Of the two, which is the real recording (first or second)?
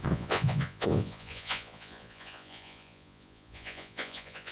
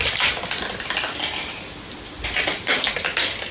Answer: second